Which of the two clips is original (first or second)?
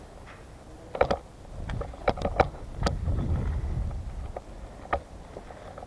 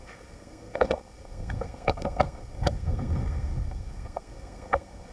first